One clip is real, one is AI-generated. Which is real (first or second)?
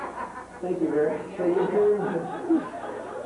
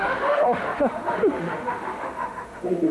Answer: first